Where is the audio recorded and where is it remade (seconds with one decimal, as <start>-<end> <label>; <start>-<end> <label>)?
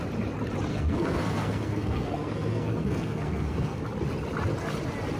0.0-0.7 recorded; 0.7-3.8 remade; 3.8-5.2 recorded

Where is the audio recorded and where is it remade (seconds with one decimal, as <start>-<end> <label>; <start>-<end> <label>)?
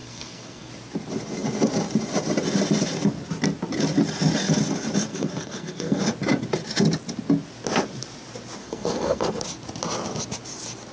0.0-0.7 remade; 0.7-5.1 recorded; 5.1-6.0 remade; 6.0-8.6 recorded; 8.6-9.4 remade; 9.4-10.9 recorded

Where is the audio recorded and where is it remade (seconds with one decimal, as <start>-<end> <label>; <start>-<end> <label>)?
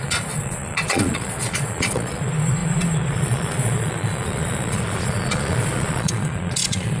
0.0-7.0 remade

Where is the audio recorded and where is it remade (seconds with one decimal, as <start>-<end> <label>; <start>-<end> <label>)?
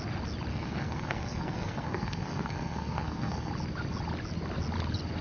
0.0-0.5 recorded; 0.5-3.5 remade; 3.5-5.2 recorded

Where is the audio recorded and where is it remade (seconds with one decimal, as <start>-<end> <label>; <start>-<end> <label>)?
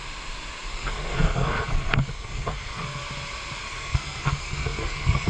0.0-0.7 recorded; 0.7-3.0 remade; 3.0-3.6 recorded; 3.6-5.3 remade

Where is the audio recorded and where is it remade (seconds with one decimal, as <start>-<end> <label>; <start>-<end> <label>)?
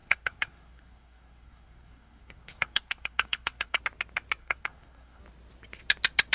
0.0-3.8 remade; 3.8-4.4 recorded; 4.4-5.2 remade; 5.2-6.3 recorded